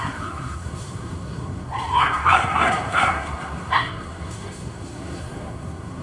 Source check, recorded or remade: remade